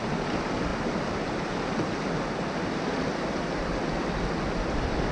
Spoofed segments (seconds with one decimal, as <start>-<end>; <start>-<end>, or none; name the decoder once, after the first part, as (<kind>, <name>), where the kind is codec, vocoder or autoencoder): none